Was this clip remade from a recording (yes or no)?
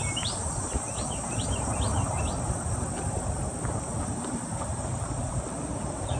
no